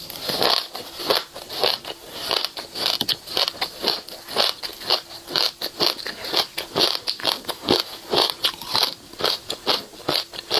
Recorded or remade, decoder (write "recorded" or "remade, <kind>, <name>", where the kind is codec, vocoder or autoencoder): recorded